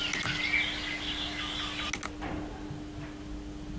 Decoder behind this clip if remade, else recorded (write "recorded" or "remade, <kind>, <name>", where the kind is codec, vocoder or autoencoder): recorded